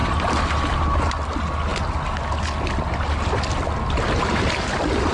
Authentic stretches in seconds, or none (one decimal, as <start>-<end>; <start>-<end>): 0.0-5.1